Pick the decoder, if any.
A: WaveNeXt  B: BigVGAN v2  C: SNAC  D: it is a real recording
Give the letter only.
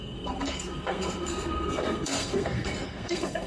C